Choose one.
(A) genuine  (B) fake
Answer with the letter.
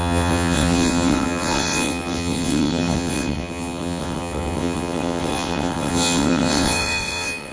B